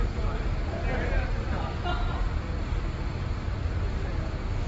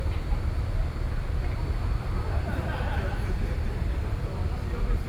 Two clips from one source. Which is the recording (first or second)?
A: first